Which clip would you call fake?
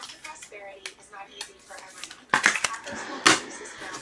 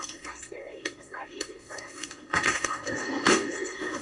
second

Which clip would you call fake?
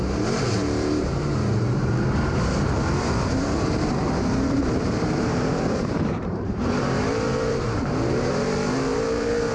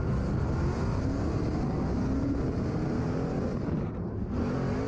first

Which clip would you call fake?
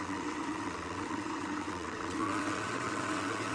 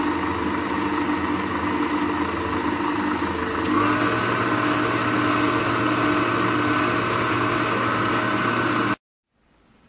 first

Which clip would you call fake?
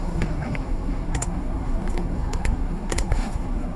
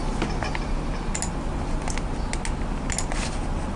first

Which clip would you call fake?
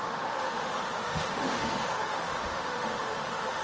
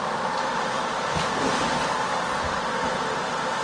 first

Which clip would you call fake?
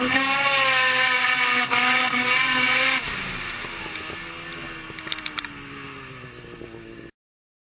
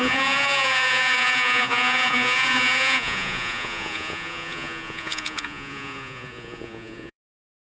second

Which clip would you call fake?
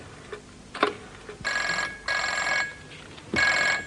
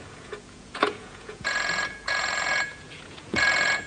second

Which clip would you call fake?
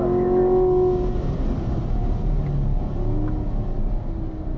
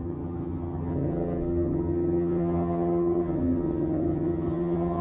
second